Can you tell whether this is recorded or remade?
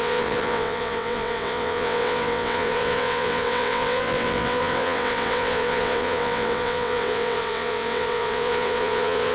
remade